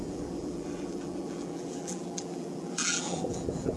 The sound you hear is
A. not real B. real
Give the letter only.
A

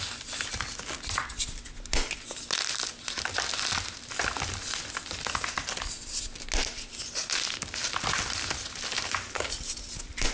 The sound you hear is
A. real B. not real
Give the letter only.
A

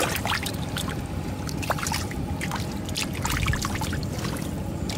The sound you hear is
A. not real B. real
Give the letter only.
B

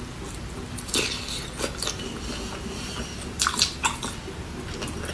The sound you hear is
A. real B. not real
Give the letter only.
A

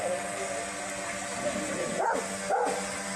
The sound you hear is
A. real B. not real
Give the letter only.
A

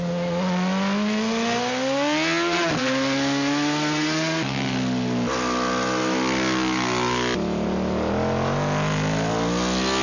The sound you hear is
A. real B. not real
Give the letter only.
A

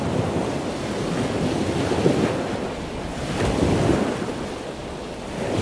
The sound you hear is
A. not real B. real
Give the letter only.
B